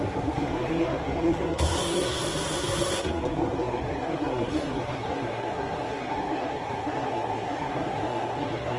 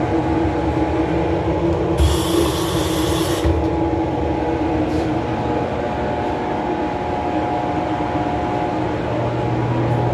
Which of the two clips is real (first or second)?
second